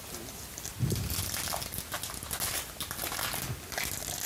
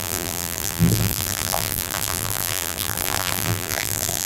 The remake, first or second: second